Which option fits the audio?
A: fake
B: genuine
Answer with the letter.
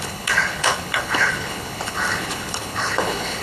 A